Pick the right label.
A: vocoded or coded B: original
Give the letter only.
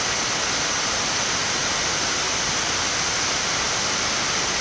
B